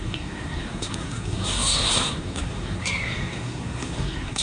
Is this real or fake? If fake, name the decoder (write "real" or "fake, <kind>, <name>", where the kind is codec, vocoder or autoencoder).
fake, codec, SNAC